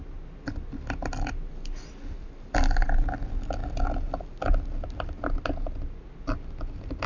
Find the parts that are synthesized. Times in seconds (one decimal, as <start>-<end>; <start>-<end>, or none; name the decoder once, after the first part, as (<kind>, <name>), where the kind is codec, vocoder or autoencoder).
none